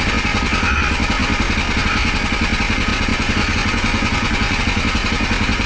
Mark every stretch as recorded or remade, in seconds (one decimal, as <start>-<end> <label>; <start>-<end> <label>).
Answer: 0.0-2.9 recorded; 2.9-4.6 remade; 4.6-5.7 recorded